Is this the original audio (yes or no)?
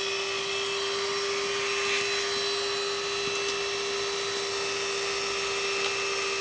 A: yes